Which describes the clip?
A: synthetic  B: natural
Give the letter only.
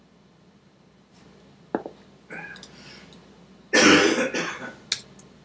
B